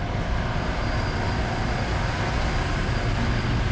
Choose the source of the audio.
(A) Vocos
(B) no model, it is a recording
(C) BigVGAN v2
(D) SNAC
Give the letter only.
B